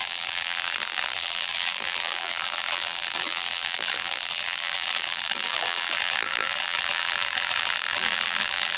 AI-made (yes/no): yes